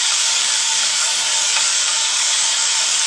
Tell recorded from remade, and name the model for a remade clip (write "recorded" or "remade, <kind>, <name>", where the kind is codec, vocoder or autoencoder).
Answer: remade, codec, DAC